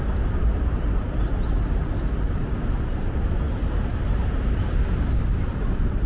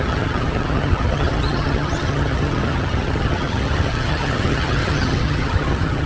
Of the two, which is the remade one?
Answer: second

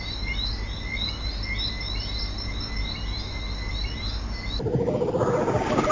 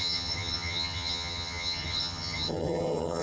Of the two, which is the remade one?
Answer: second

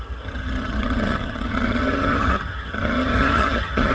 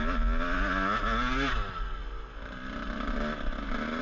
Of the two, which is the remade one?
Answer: first